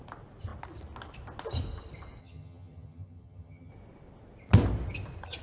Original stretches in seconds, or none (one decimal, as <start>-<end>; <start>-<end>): 0.0-2.2; 3.7-5.4